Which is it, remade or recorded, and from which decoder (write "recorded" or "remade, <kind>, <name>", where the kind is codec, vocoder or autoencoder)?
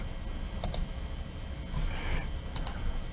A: recorded